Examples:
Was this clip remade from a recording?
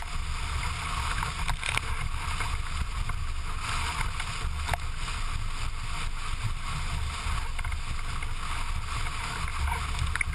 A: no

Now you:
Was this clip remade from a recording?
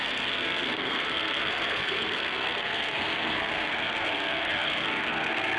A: yes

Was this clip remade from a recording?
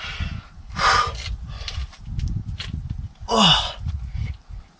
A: no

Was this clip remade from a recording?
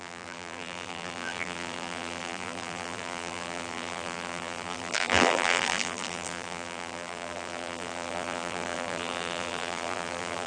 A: yes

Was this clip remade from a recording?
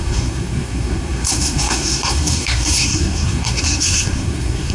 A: yes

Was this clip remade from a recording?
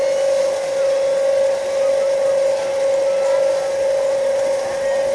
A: no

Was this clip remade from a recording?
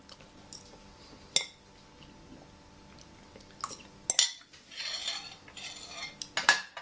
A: no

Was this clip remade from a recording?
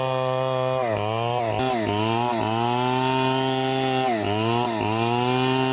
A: no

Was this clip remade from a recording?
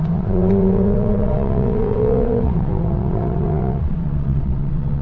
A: yes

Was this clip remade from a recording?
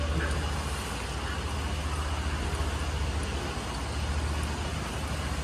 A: no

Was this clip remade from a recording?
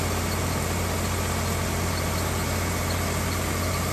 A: no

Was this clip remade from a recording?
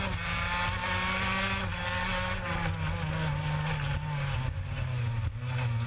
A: no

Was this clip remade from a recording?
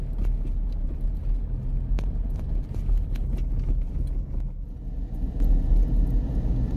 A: no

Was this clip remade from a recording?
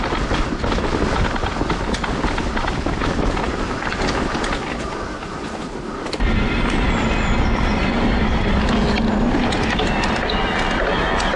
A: no